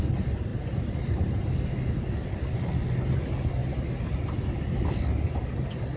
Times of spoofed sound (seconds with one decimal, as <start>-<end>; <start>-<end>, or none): none